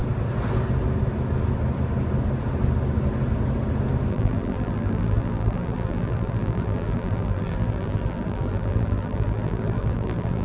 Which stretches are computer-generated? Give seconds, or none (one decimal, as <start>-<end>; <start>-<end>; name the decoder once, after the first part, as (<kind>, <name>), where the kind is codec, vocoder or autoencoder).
4.1-10.4 (vocoder, BigVGAN v2)